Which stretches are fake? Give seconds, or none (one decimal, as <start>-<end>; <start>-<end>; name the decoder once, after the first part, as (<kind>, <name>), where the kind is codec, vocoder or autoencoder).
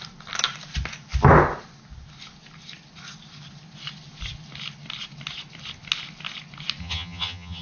6.8-7.6 (vocoder, HiFi-GAN)